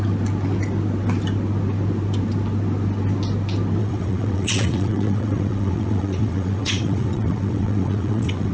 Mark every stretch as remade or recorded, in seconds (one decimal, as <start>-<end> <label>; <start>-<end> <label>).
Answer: 0.0-3.8 recorded; 3.8-8.5 remade

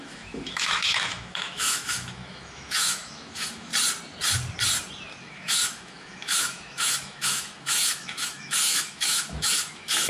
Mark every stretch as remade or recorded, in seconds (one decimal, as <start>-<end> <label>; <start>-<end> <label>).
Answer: 0.0-3.7 remade; 3.7-5.2 recorded; 5.2-10.1 remade

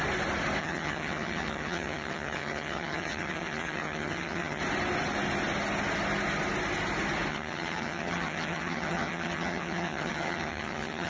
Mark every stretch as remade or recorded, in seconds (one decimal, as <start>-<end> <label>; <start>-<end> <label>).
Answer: 0.0-0.6 recorded; 0.6-4.6 remade; 4.6-7.3 recorded; 7.3-11.1 remade

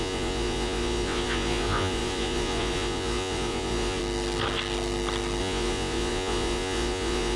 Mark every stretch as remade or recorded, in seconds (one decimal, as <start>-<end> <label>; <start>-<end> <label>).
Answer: 0.0-4.0 remade; 4.0-5.4 recorded; 5.4-7.4 remade

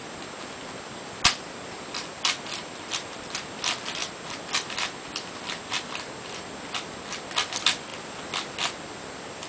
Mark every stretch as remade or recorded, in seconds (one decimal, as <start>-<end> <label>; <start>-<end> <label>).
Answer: 0.0-9.5 recorded

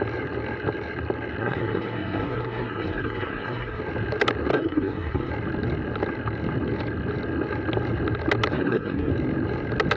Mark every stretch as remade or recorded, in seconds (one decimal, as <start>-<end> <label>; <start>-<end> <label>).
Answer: 0.0-1.4 recorded; 1.4-3.8 remade; 3.8-4.5 recorded; 4.5-5.3 remade; 5.3-8.5 recorded; 8.5-9.1 remade; 9.1-10.0 recorded